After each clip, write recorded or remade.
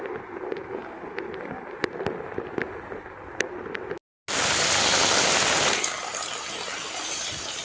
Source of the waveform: recorded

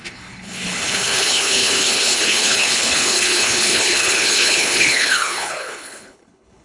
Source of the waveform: remade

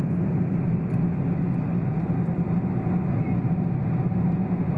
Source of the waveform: recorded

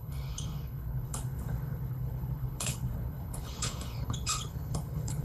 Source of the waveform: remade